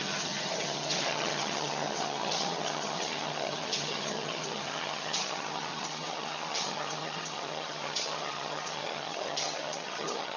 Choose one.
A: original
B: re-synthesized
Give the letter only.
B